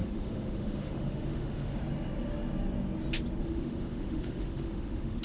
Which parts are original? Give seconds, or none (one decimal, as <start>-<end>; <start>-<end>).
1.8-3.4